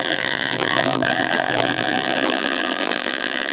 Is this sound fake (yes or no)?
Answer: yes